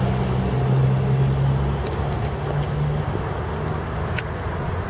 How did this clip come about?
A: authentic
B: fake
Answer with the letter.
A